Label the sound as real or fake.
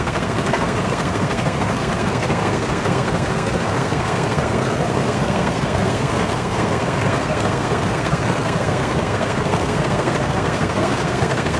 fake